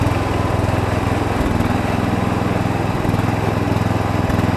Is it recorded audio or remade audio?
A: recorded